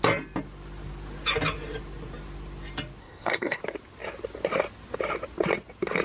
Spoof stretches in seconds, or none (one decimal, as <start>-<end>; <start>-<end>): 3.0-3.6